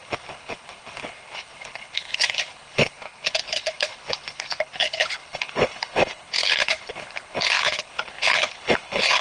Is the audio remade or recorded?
remade